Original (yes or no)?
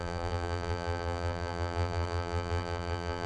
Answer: no